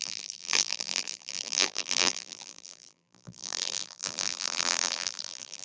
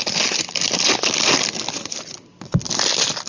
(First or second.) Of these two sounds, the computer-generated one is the first